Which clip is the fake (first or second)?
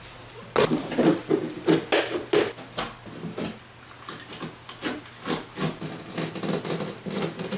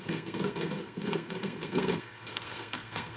second